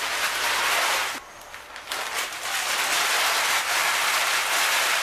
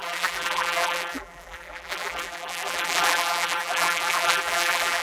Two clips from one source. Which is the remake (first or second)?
second